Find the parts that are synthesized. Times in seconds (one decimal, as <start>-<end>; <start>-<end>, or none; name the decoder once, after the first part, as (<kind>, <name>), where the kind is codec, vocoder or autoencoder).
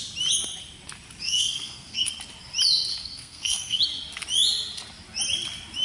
1.2-2.1 (codec, SNAC); 2.9-3.8